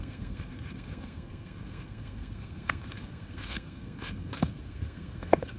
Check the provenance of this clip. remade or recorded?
remade